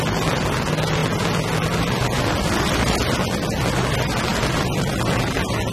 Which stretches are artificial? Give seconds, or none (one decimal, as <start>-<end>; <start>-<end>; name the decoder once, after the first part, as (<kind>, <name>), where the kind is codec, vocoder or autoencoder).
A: none